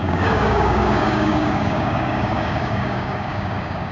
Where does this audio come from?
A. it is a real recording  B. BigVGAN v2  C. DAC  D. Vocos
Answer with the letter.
C